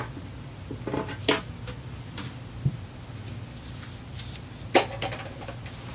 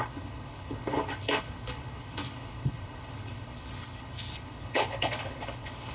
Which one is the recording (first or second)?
first